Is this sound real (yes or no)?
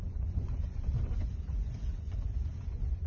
no